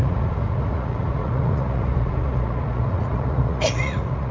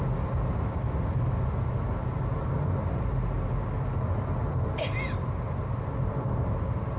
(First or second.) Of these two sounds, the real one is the second